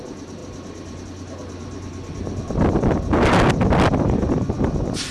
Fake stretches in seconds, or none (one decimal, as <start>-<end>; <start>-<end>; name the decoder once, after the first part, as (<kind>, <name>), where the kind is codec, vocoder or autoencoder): none